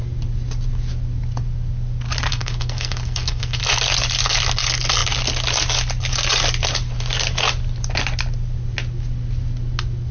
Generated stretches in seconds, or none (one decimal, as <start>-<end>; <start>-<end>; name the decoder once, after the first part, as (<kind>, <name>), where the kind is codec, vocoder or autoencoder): 2.3-3.6 (codec, SNAC)